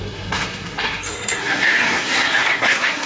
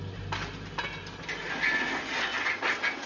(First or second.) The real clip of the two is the second